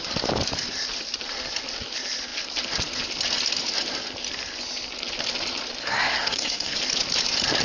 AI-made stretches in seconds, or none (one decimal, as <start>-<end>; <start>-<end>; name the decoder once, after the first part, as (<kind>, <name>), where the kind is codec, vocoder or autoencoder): 5.8-6.8 (codec, SNAC)